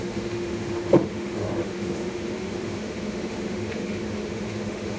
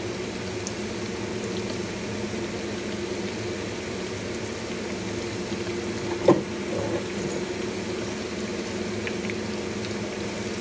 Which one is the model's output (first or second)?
first